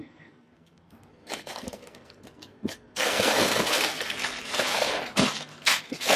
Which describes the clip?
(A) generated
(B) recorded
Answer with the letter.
A